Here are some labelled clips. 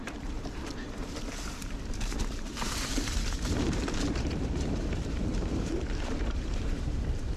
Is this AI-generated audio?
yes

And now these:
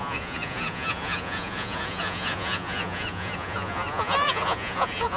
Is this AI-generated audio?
yes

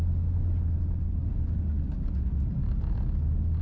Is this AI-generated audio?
no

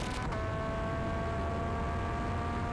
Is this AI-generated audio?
no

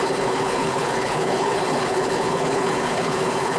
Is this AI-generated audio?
yes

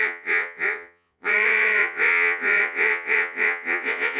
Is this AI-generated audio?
yes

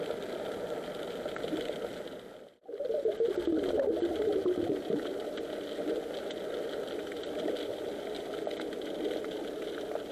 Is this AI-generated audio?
no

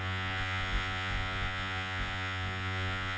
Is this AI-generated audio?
yes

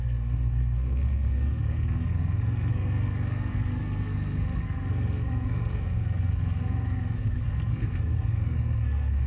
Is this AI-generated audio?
yes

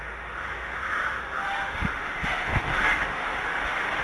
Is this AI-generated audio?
yes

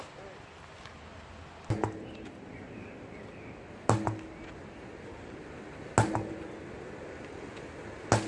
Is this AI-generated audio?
no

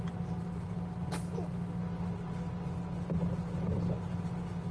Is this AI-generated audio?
no